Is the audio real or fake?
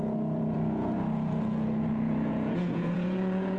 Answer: fake